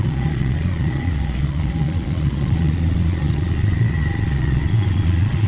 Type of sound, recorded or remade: remade